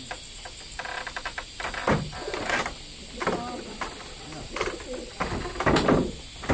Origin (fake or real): real